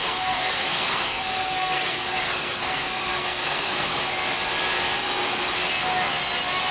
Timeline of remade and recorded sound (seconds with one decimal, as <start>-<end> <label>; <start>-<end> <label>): 0.0-4.0 remade; 4.0-6.7 recorded